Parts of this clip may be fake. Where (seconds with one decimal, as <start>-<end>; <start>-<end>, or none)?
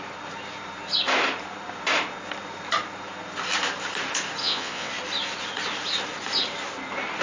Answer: 4.4-4.9